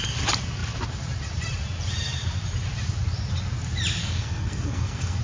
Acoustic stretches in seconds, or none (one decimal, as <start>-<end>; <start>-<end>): 0.0-4.0